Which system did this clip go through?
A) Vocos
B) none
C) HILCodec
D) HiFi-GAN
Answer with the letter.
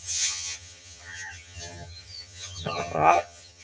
D